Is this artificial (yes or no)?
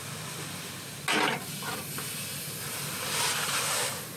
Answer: no